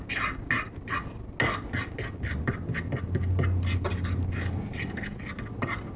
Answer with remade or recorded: recorded